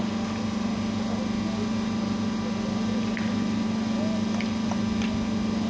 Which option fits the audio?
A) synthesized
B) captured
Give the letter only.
B